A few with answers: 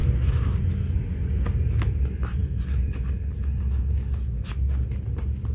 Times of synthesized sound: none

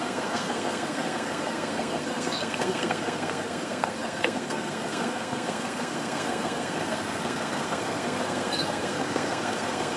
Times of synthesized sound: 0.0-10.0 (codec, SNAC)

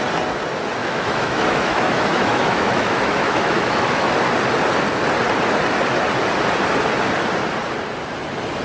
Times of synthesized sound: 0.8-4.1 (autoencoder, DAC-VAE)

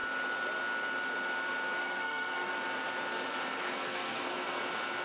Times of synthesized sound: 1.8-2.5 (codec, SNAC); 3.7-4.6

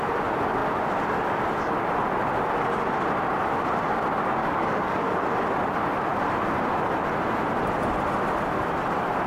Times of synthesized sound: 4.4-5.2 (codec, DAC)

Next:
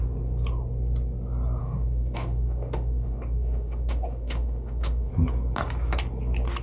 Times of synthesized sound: 1.6-5.1 (autoencoder, DAC-VAE)